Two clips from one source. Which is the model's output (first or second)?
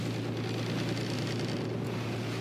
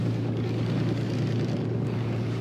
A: second